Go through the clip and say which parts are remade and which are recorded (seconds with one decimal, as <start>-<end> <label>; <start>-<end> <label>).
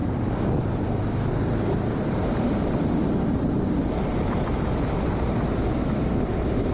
0.0-6.7 recorded